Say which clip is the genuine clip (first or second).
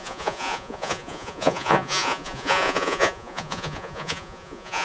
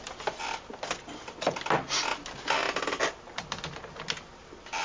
second